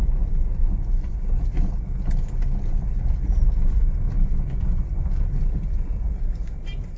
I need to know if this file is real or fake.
real